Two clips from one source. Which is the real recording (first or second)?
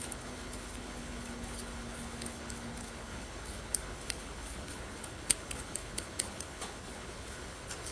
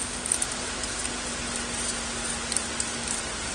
second